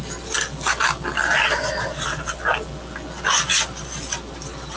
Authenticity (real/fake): real